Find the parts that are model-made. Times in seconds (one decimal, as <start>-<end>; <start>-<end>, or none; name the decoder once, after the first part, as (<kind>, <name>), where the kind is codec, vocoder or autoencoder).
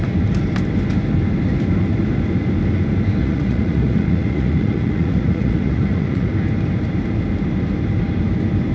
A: 3.2-6.3 (vocoder, Vocos)